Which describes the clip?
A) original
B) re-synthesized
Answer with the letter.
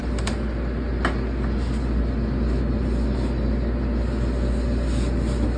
A